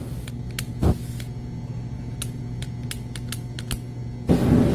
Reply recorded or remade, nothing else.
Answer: recorded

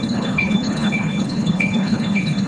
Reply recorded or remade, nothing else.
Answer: remade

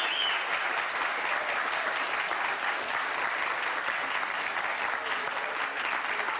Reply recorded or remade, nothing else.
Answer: recorded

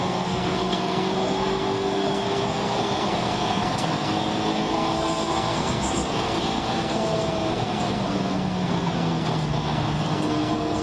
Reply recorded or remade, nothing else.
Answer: remade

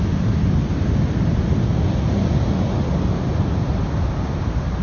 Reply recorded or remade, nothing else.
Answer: recorded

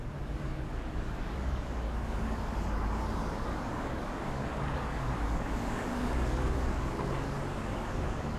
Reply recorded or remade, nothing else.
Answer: remade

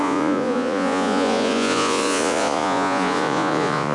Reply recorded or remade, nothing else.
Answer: remade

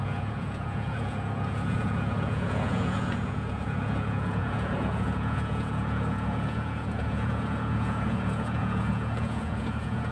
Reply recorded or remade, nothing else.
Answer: remade